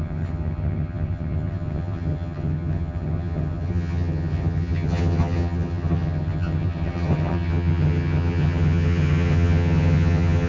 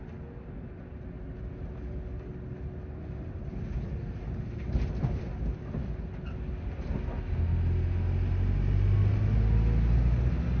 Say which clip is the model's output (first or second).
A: first